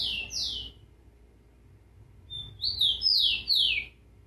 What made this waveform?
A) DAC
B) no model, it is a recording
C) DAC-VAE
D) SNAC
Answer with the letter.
B